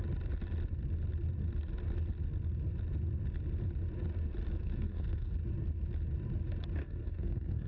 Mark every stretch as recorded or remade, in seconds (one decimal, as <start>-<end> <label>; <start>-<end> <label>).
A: 0.0-4.6 recorded; 4.6-5.3 remade; 5.3-6.8 recorded; 6.8-7.7 remade